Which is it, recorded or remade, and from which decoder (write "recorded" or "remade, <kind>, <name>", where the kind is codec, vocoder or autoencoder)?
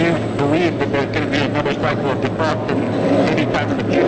recorded